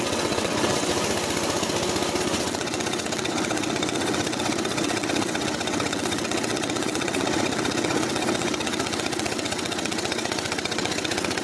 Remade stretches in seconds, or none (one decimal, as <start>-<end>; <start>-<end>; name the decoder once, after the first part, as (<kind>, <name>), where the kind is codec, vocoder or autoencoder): 0.0-0.9 (vocoder, WaveNeXt); 2.2-11.4